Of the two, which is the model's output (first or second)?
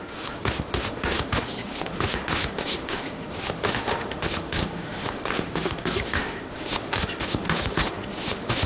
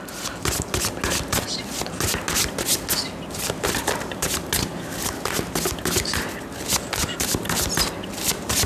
first